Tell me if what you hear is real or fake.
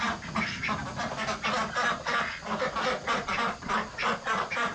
real